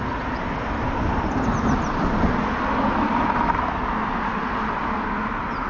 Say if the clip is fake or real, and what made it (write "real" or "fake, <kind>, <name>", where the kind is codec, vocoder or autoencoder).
real